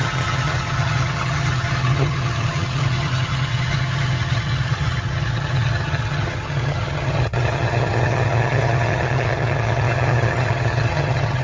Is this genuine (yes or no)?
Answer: no